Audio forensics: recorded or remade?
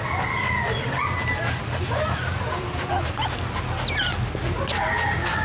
recorded